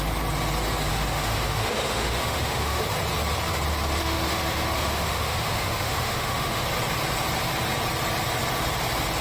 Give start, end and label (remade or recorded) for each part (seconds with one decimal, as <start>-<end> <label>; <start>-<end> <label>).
0.0-0.9 recorded; 0.9-2.8 remade; 2.8-4.0 recorded; 4.0-6.6 remade; 6.6-9.2 recorded